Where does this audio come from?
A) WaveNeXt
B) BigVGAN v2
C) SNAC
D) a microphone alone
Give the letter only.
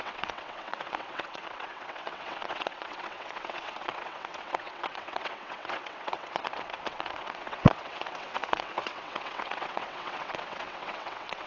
A